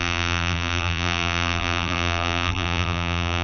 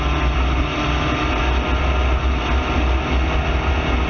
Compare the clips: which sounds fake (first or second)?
first